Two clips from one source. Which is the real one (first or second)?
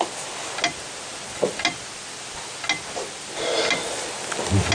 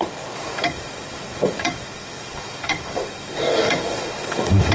first